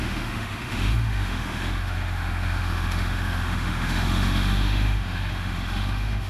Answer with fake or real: fake